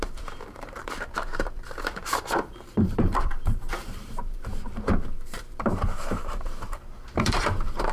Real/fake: fake